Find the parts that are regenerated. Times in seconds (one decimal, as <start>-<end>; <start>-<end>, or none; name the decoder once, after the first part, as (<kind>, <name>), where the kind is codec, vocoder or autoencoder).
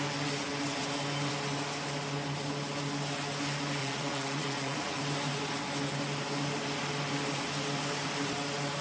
3.8-5.0 (vocoder, Vocos)